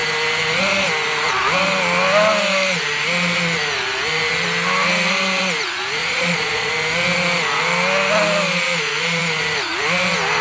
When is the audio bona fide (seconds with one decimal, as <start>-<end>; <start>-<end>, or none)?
0.0-6.0; 6.7-10.4